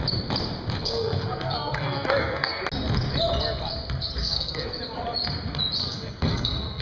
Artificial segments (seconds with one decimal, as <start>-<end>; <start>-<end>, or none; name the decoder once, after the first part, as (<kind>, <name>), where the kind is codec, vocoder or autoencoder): 0.8-2.6 (codec, SNAC); 4.2-4.7; 5.8-6.8